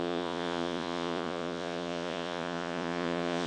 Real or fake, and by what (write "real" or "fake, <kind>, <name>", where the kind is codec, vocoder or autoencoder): fake, vocoder, Vocos